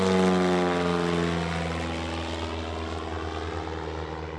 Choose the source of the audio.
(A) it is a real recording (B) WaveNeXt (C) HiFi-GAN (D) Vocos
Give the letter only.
A